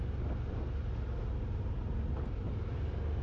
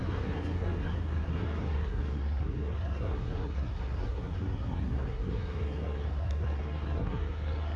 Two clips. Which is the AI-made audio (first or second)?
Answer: second